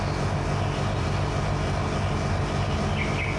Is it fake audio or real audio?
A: real